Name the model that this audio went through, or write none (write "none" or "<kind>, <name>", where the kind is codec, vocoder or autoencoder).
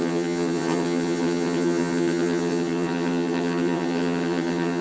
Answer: vocoder, HiFi-GAN